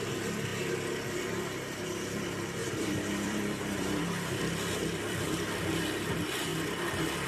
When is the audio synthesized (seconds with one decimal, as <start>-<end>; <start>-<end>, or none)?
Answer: 2.6-6.1